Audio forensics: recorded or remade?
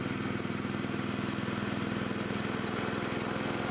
recorded